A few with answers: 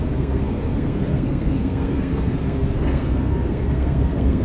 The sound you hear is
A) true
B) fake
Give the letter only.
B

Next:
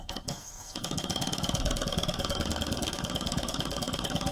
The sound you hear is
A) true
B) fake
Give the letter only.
B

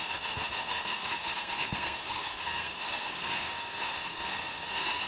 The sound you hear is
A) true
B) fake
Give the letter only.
B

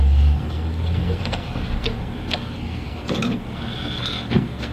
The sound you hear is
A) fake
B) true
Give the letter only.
A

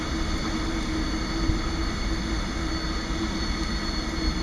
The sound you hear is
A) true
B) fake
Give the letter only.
A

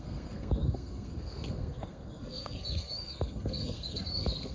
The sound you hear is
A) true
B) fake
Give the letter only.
B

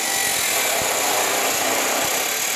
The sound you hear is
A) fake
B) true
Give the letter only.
B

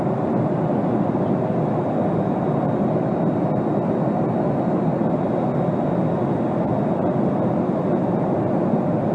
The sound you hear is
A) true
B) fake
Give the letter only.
A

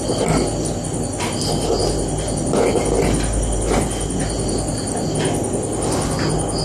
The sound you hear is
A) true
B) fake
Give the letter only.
A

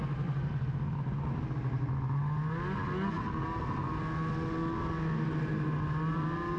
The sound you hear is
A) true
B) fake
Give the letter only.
A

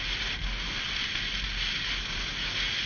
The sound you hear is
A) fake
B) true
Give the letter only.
B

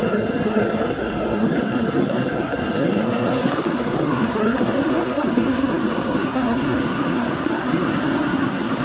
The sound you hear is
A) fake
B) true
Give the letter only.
A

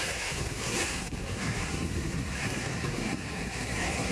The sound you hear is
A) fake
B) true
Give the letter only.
A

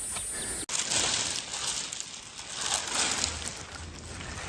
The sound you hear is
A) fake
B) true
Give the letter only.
B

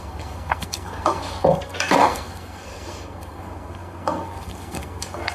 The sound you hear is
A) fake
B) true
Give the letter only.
A